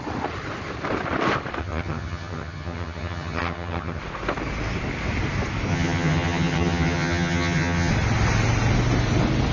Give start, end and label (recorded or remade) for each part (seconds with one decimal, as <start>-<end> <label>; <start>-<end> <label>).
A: 0.0-1.6 recorded; 1.6-4.0 remade; 4.0-5.7 recorded; 5.7-7.9 remade; 7.9-9.5 recorded